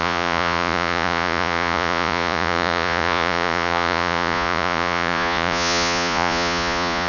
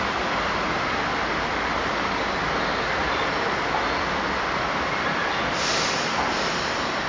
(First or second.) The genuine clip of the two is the second